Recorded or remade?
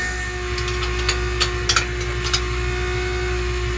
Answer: recorded